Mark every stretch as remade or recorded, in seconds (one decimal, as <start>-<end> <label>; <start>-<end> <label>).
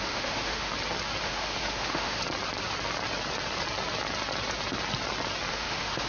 0.0-0.7 remade; 0.7-1.2 recorded; 1.2-2.2 remade; 2.2-5.5 recorded; 5.5-6.1 remade